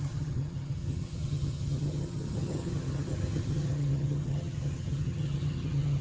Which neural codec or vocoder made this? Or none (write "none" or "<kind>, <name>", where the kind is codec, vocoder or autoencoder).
vocoder, HiFi-GAN